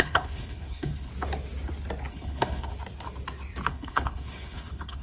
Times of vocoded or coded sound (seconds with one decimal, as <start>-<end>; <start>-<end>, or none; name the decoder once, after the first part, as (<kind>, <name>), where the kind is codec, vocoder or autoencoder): 0.0-1.1 (codec, HILCodec); 2.1-2.7; 3.7-5.0